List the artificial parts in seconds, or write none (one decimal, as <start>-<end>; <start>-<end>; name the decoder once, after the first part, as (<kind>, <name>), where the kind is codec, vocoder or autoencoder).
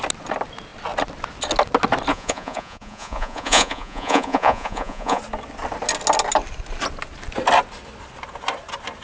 2.1-5.2 (vocoder, Vocos)